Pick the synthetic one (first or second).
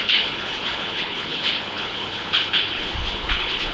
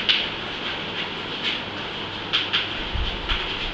first